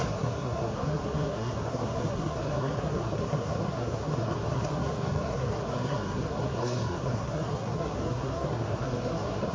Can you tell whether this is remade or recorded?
remade